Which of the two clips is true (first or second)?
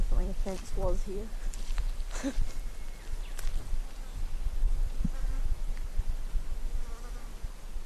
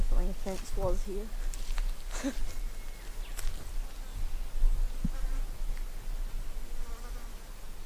second